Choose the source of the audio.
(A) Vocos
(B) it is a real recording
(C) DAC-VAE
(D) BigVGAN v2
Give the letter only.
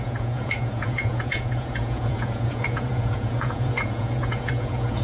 A